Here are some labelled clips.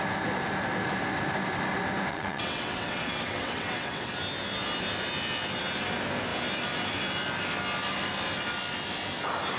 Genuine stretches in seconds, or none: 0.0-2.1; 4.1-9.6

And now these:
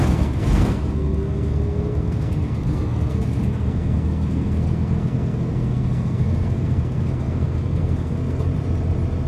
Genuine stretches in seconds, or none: 8.5-9.3

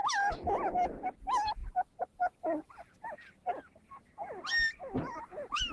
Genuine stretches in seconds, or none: 0.0-1.6; 2.9-5.1

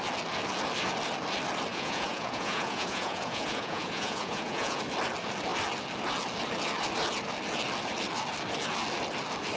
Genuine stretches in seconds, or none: 0.0-1.7; 4.8-9.6

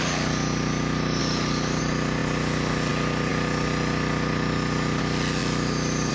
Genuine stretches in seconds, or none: 0.0-1.2; 1.8-6.1

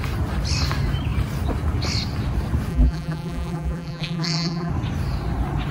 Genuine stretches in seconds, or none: 0.0-2.7; 4.7-5.7

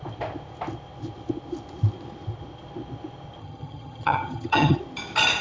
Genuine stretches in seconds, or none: 0.0-3.4; 4.8-5.4